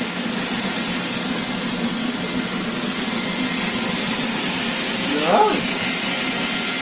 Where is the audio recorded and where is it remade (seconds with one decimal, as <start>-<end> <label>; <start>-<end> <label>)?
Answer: 0.0-4.0 recorded; 4.0-4.5 remade; 4.5-6.8 recorded